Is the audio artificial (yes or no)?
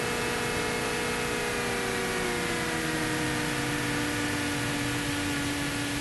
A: no